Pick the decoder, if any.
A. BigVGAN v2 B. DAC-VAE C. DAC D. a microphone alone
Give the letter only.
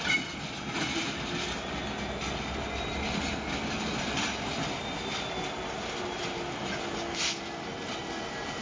D